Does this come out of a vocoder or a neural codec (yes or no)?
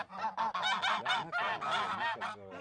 no